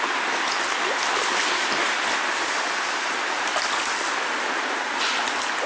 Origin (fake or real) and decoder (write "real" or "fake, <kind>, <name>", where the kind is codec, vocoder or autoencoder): real